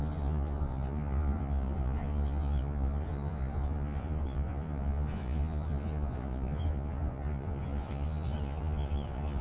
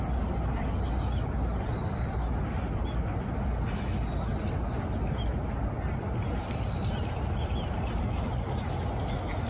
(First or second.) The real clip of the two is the second